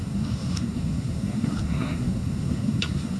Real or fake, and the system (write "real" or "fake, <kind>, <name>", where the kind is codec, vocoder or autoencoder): fake, codec, SNAC